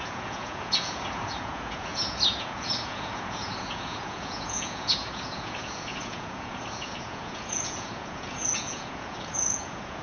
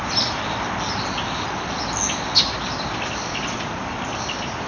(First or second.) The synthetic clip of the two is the first